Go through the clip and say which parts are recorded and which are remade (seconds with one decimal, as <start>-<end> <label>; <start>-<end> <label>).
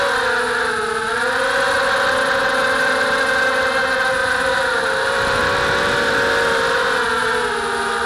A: 0.0-4.2 recorded; 4.2-5.4 remade; 5.4-8.1 recorded